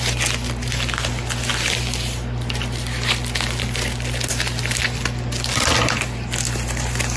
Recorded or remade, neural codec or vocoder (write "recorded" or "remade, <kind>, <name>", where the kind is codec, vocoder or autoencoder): recorded